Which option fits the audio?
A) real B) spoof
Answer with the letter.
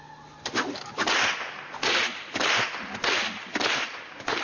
A